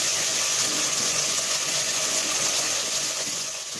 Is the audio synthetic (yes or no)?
yes